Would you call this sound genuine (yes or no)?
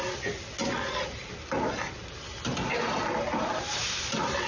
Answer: yes